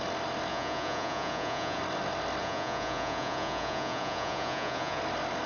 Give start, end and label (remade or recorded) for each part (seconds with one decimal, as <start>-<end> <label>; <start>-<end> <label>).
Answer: 0.0-0.5 recorded; 0.5-1.8 remade; 1.8-2.4 recorded; 2.4-5.0 remade; 5.0-5.5 recorded